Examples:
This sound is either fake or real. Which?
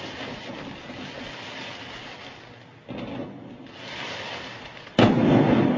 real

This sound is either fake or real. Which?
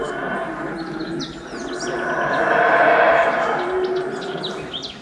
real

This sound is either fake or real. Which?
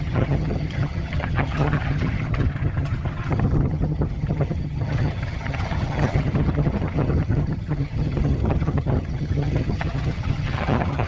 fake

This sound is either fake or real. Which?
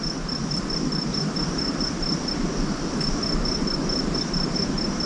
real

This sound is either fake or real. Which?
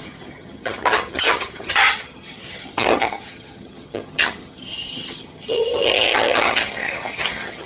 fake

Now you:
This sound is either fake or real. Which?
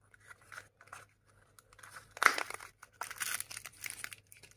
real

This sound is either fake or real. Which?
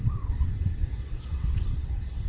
fake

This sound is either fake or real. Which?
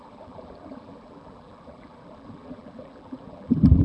fake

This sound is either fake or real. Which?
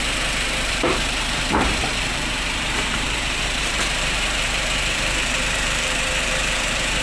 fake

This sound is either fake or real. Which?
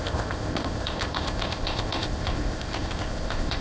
fake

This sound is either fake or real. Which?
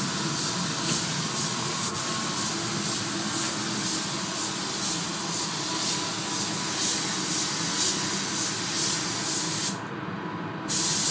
real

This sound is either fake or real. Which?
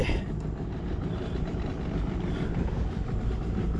real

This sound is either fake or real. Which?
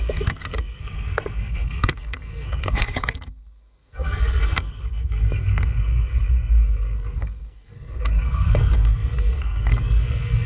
fake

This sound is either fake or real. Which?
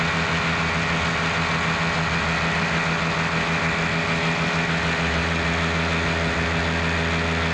real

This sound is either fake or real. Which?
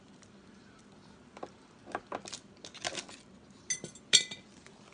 real